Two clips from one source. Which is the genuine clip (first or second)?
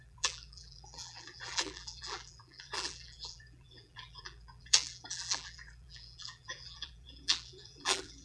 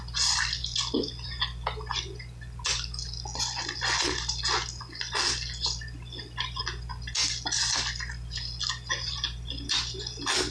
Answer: second